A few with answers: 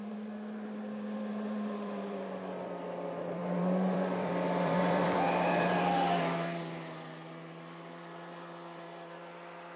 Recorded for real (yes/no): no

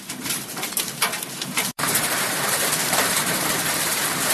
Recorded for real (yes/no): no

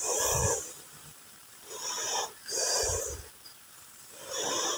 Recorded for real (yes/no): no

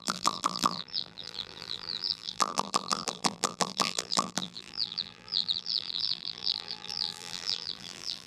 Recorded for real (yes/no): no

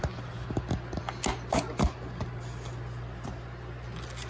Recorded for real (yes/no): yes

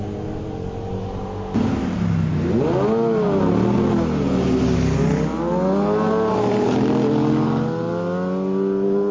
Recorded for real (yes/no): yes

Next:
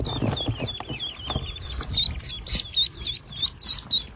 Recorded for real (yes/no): yes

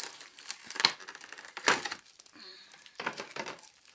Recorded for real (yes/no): no